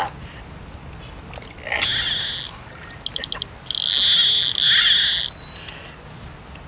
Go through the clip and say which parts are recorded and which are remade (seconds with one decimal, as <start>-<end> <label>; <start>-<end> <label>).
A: 0.0-6.7 recorded